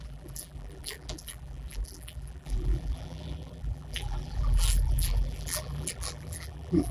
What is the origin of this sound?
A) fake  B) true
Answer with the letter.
A